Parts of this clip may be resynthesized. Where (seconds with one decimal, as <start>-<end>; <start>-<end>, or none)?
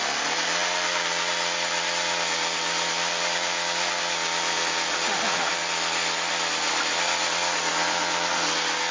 none